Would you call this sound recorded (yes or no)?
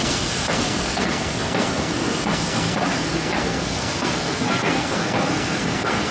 no